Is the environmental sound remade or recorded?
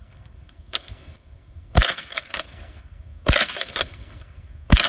remade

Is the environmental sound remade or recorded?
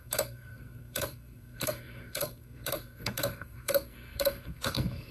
remade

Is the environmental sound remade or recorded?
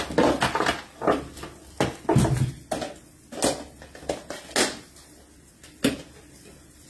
recorded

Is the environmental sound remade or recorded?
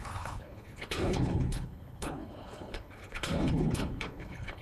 remade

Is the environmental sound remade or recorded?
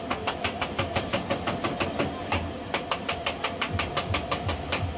recorded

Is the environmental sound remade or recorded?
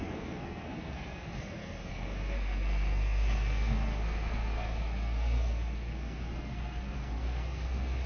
remade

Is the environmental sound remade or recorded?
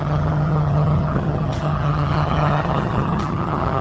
remade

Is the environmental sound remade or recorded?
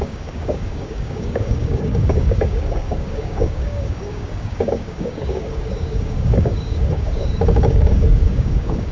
remade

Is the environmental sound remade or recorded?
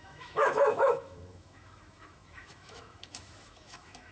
remade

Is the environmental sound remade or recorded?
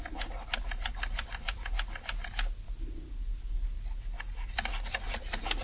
recorded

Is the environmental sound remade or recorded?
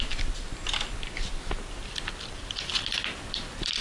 recorded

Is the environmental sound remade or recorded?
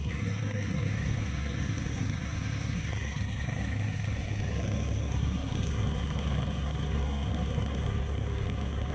remade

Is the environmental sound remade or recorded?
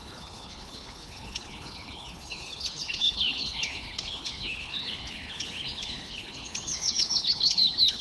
remade